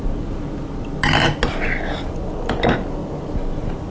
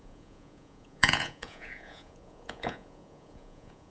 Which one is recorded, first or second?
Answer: first